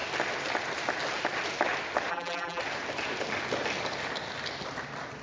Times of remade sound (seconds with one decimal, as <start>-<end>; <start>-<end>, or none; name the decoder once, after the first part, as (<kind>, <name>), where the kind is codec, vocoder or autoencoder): 2.1-2.6 (vocoder, BigVGAN v2)